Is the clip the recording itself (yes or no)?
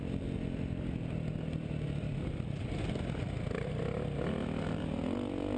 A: yes